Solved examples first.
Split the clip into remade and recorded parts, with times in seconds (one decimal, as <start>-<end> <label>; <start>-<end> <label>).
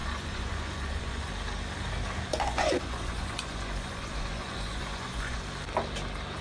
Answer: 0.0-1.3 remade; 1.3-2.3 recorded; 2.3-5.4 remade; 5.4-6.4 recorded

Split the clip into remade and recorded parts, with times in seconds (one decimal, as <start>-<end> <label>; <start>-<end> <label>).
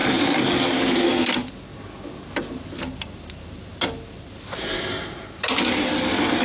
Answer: 0.0-1.1 remade; 1.1-6.4 recorded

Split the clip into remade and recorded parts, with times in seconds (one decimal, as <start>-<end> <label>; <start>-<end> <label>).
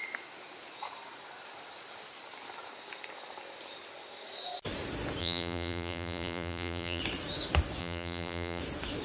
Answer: 0.0-5.2 recorded; 5.2-7.0 remade; 7.0-7.8 recorded; 7.8-8.6 remade; 8.6-9.0 recorded